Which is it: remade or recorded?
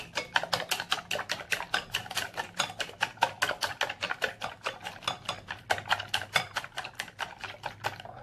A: recorded